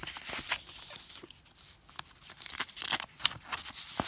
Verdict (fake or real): real